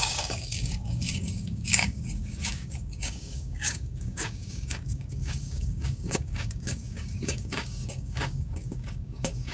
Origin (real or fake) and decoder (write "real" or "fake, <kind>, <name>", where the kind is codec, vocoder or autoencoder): fake, codec, DAC